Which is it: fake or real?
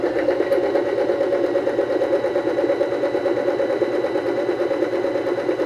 real